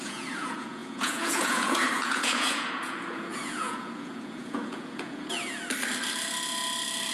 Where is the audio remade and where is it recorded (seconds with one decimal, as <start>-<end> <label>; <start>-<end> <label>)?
0.0-5.6 remade; 5.6-7.1 recorded